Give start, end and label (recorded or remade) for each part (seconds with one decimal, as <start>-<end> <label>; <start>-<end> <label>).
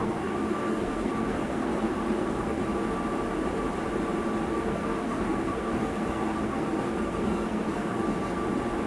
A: 0.0-2.6 remade; 2.6-4.5 recorded; 4.5-8.4 remade; 8.4-8.9 recorded